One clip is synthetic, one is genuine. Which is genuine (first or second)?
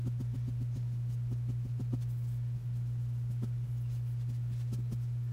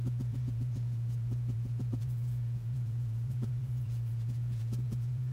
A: first